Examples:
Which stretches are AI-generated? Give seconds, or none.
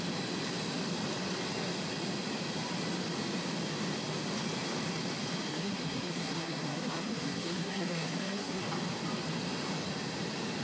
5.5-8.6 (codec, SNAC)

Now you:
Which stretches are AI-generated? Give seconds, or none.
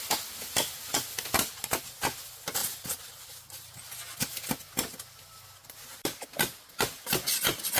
none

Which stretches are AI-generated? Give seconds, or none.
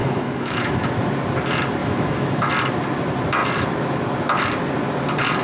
0.0-0.9 (autoencoder, DAC-VAE); 1.8-2.5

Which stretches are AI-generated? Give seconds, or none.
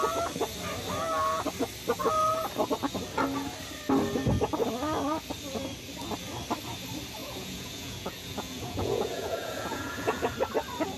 7.2-10.3 (vocoder, Vocos)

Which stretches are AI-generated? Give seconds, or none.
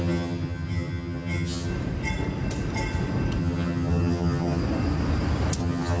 0.0-1.7 (vocoder, HiFi-GAN); 3.4-4.6; 5.6-6.0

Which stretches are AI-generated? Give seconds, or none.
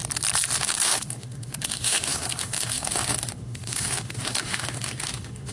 0.6-5.5 (autoencoder, DAC-VAE)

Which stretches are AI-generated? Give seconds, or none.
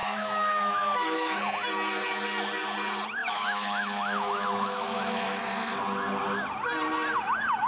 0.0-1.4 (autoencoder, DAC-VAE); 3.2-5.4